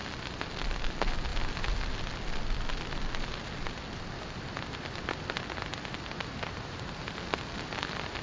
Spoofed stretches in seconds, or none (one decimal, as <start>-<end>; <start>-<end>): none